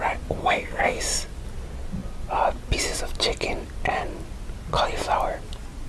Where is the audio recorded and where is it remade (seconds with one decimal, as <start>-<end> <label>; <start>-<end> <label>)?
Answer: 0.0-0.4 recorded; 0.4-1.0 remade; 1.0-5.9 recorded